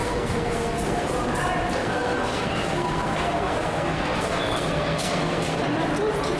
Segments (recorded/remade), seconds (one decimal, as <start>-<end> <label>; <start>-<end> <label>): 0.0-1.1 remade; 1.1-1.8 recorded; 1.8-5.6 remade; 5.6-6.4 recorded